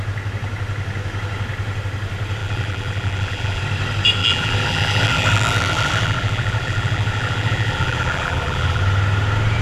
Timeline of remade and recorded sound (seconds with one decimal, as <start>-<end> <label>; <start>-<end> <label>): 0.0-2.4 recorded; 2.4-3.6 remade; 3.6-4.2 recorded; 4.2-8.8 remade; 8.8-9.6 recorded